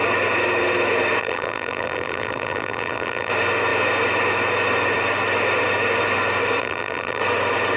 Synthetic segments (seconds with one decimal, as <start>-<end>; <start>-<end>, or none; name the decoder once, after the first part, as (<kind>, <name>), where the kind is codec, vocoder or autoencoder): 1.2-3.3 (vocoder, BigVGAN v2); 6.6-7.2